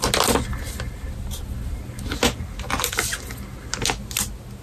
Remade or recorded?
recorded